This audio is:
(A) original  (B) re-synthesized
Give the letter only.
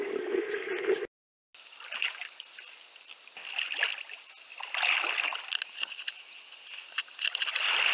A